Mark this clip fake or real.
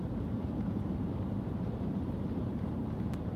fake